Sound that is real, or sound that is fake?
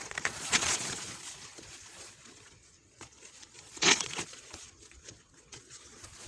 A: fake